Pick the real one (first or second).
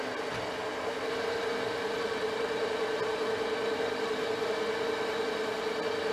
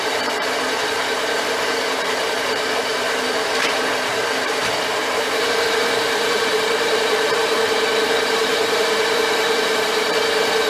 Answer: first